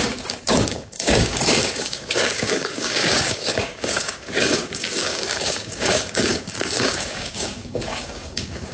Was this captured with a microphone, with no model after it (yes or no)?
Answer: no